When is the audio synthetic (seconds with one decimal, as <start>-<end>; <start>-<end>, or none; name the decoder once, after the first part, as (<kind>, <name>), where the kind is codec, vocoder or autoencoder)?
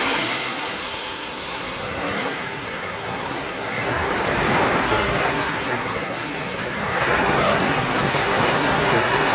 0.0-4.1 (codec, SNAC); 4.8-9.3